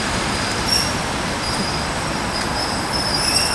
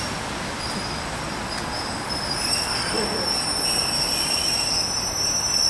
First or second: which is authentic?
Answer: second